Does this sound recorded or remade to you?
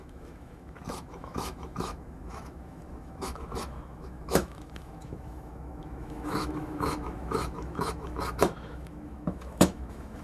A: remade